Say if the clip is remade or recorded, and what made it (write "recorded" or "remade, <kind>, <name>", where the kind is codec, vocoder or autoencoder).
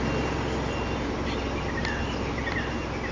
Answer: recorded